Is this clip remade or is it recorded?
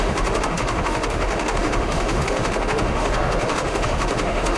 remade